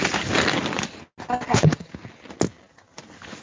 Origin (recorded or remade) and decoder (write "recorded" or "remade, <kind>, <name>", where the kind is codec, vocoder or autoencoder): recorded